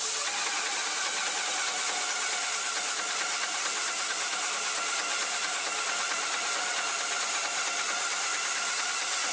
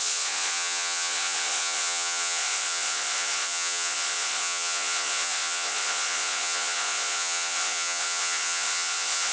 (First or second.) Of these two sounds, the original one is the first